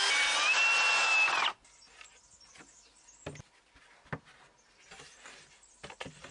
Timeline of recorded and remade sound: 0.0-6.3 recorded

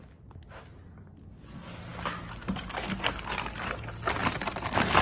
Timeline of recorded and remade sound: 0.0-5.0 recorded

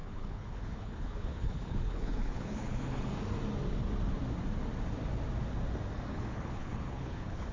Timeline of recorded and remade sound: 0.0-3.1 remade; 3.1-6.1 recorded; 6.1-7.5 remade

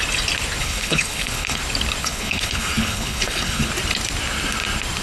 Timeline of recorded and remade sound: 0.0-0.6 recorded; 0.6-1.6 remade; 1.6-2.0 recorded; 2.0-3.7 remade; 3.7-5.0 recorded